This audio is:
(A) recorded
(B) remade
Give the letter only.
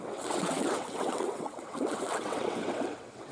B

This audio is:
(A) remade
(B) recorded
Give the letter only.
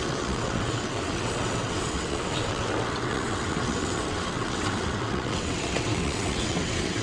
A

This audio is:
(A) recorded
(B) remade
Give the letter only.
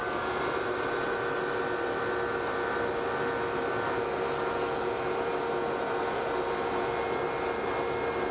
A